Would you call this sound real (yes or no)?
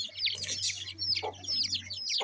yes